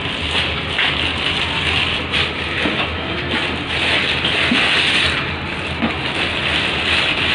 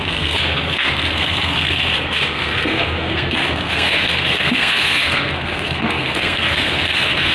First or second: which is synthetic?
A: second